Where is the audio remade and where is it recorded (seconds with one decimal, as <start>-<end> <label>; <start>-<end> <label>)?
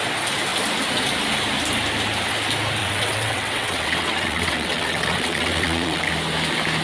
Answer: 0.0-2.8 recorded; 2.8-6.1 remade; 6.1-6.8 recorded